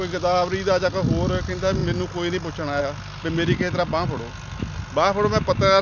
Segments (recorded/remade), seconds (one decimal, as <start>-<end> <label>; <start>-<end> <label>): 0.0-5.8 recorded